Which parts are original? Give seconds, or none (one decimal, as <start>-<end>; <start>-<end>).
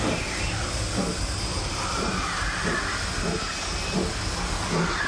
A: 0.0-1.5; 2.3-5.1